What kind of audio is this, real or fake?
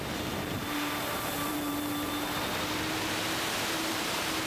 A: fake